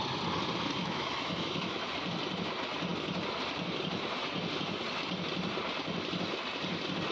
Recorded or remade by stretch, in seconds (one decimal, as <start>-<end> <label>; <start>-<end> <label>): 0.0-0.8 recorded; 0.8-1.9 remade; 1.9-7.1 recorded